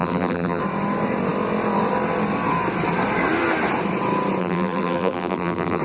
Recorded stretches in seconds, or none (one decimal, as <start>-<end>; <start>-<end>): 0.6-4.4